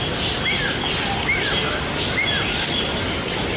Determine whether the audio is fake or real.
real